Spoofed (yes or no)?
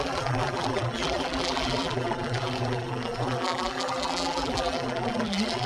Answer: yes